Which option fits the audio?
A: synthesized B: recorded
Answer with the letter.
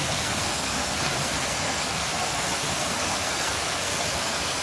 A